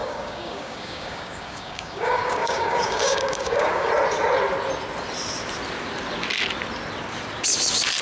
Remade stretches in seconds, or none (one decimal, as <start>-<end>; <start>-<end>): 0.0-3.9